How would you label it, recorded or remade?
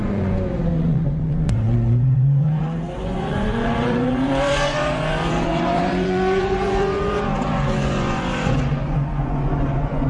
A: remade